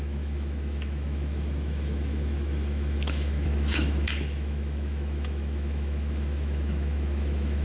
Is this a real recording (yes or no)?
no